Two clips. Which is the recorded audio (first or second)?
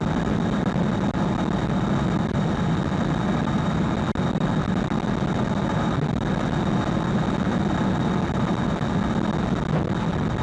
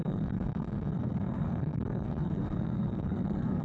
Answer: first